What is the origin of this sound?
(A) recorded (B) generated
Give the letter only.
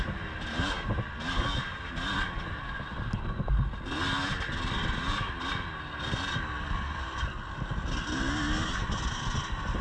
A